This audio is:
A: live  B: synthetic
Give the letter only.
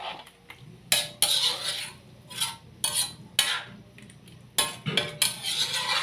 A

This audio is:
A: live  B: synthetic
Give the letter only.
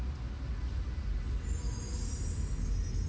A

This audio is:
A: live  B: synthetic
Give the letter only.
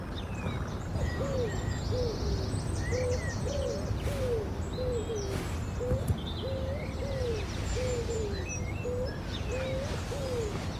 A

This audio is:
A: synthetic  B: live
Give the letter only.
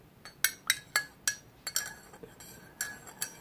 B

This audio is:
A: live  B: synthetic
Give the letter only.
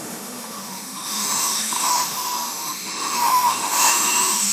B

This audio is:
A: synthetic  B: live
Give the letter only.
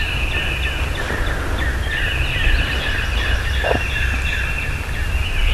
B